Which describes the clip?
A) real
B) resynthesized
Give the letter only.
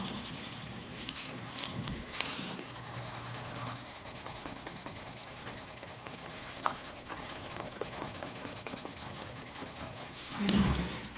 B